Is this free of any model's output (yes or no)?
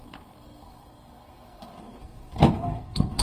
no